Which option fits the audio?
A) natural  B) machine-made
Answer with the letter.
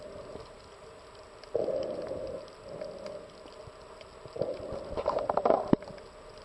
A